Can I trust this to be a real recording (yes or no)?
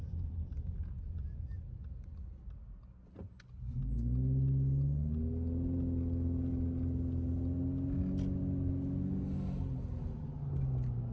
yes